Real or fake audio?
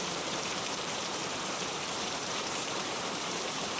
fake